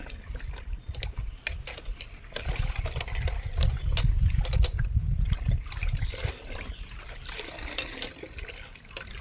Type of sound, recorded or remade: recorded